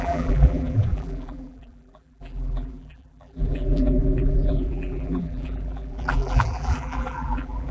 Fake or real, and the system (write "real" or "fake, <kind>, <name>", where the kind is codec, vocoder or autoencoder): fake, vocoder, BigVGAN v2